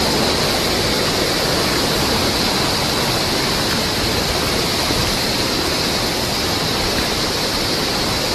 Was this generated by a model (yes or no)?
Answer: no